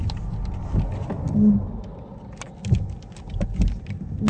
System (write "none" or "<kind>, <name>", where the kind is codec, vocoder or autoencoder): none